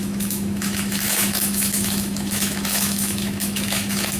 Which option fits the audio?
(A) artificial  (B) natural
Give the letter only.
A